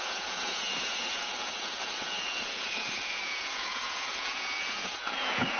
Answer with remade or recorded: remade